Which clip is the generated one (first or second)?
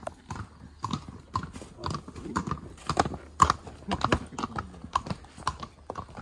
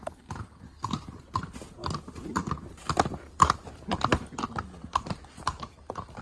second